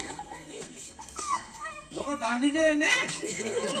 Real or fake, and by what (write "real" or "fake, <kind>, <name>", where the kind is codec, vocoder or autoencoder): fake, codec, SNAC